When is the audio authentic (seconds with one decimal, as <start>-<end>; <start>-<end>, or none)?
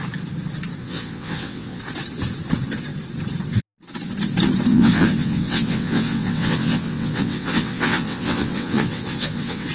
0.0-0.8; 1.8-4.7